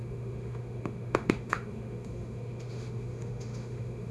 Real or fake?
fake